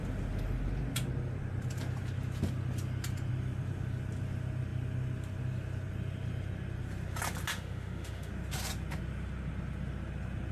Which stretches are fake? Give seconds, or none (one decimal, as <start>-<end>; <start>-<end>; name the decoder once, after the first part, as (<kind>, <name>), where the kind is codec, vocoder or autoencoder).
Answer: 7.5-8.3 (autoencoder, DAC-VAE)